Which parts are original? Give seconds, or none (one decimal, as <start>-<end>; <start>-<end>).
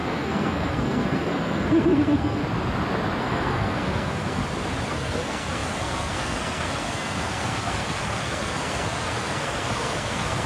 2.4-3.2; 4.4-4.9